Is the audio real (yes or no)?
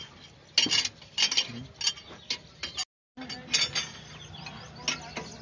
yes